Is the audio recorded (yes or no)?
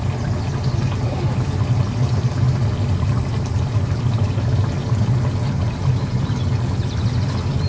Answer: yes